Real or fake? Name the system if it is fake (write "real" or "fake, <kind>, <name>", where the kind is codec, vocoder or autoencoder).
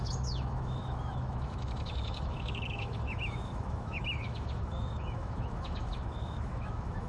fake, autoencoder, DAC-VAE